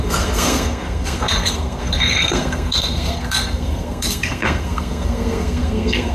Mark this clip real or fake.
fake